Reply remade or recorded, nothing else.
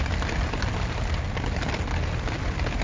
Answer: recorded